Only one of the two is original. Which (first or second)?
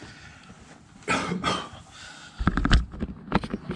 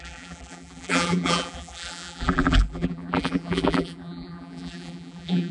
first